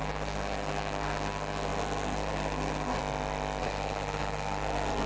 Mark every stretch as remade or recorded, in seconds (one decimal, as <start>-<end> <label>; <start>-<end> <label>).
0.0-3.0 remade; 3.0-3.6 recorded; 3.6-5.1 remade